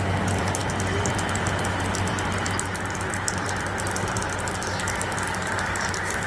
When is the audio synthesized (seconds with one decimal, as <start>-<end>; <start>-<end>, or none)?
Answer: 0.0-0.6; 4.4-6.3